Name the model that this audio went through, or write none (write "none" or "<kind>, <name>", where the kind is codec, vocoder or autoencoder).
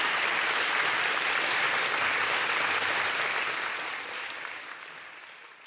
vocoder, BigVGAN v2